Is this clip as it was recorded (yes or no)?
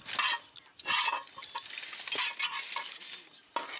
yes